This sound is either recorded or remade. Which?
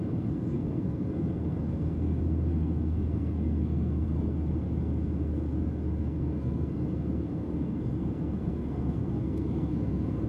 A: remade